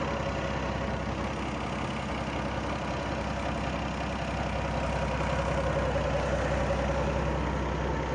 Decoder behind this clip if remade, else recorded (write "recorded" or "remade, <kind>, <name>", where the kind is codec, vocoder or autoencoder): recorded